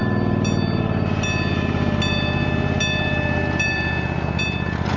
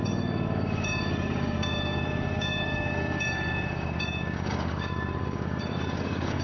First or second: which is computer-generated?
second